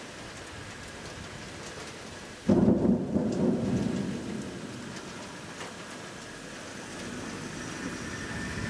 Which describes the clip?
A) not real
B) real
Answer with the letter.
B